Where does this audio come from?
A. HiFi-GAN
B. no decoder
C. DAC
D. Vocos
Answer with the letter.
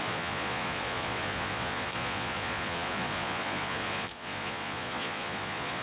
D